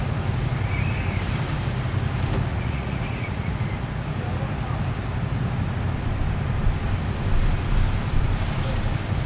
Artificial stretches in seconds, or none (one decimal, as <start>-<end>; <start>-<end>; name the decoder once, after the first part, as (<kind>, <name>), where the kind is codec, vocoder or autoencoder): 2.5-3.5 (vocoder, Vocos)